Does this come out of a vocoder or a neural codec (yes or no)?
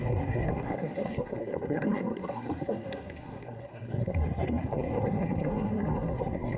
yes